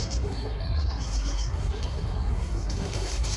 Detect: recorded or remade remade